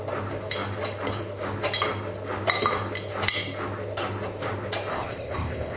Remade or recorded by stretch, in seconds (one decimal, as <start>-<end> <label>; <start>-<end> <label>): 0.0-4.9 recorded; 4.9-5.8 remade